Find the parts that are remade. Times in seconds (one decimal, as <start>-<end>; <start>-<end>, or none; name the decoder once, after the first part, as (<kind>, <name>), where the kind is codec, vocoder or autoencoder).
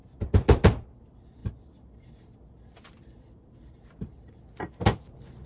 none